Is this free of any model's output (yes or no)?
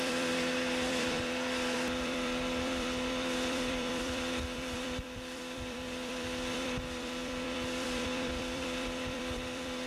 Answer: no